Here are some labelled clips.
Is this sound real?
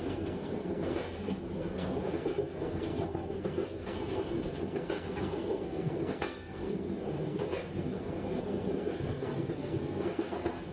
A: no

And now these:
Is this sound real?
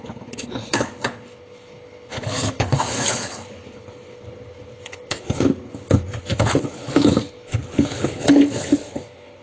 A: no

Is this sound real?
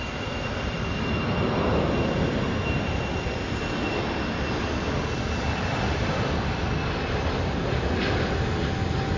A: yes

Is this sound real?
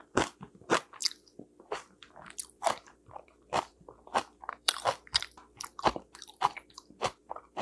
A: no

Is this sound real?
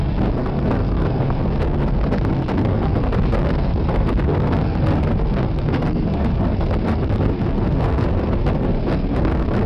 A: no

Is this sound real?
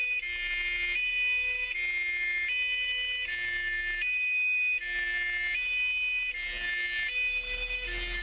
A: yes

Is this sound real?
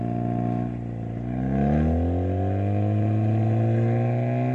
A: yes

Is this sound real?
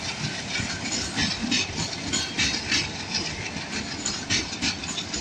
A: yes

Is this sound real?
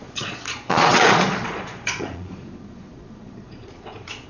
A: no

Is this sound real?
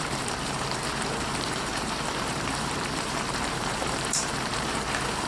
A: no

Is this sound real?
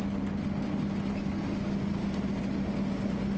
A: yes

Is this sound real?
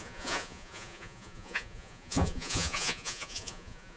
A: no